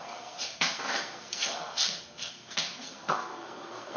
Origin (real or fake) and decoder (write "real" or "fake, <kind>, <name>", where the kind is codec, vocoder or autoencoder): fake, codec, SNAC